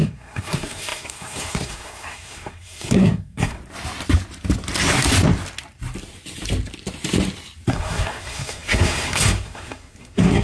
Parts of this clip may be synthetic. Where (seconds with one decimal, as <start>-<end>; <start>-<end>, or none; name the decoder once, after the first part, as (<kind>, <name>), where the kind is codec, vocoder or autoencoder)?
0.0-3.6 (codec, SNAC); 7.7-10.4